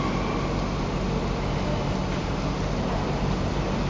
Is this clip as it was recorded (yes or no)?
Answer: yes